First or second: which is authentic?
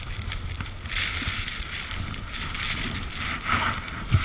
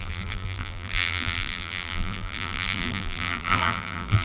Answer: first